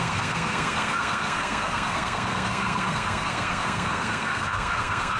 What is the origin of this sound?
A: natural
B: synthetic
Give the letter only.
B